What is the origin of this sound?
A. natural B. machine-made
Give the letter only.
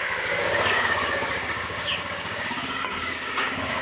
B